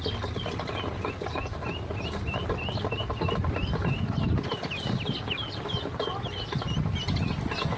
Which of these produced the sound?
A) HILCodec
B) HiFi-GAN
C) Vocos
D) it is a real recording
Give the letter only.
D